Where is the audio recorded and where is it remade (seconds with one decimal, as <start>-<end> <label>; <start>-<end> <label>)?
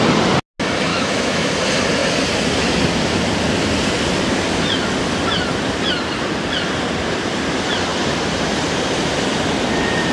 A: 0.0-0.9 recorded; 0.9-1.5 remade; 1.5-10.1 recorded